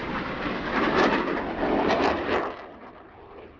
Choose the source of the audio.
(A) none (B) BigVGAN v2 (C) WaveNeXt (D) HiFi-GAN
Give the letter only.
A